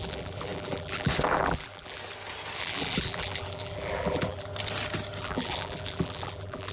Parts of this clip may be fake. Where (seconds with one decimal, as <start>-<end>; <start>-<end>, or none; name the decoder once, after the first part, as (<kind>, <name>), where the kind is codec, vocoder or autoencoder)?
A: 0.0-2.0 (vocoder, BigVGAN v2); 2.6-4.5; 5.2-6.7